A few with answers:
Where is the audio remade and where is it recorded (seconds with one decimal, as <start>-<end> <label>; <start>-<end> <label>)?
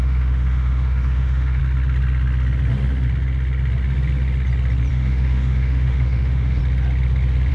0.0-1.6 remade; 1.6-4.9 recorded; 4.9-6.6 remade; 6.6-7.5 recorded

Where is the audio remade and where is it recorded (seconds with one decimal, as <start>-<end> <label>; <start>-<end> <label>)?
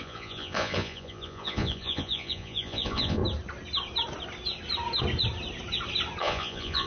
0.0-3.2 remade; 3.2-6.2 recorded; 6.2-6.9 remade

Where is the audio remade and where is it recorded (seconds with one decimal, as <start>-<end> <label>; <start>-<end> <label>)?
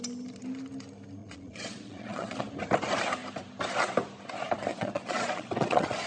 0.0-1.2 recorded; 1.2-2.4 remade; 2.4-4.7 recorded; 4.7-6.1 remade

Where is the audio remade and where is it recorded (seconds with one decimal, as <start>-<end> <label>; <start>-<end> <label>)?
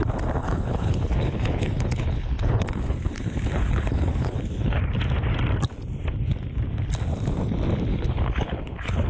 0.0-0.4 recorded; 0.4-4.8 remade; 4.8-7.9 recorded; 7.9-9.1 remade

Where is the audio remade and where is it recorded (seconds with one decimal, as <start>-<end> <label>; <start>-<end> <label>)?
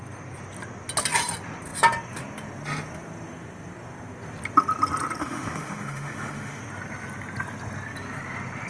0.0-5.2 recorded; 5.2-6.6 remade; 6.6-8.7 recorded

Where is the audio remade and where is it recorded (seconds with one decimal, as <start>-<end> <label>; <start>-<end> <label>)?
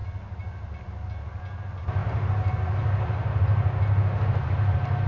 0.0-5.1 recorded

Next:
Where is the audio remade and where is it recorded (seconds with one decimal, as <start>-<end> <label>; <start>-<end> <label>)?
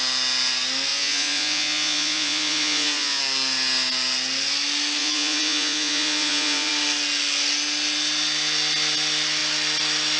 0.0-0.9 recorded; 0.9-3.2 remade; 3.2-5.0 recorded; 5.0-6.7 remade; 6.7-10.2 recorded